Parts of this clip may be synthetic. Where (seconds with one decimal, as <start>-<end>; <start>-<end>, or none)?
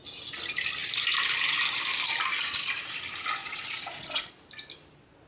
3.4-4.3